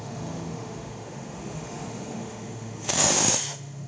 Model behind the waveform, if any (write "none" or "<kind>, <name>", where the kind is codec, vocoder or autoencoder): autoencoder, DAC-VAE